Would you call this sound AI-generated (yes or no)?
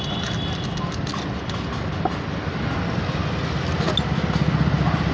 no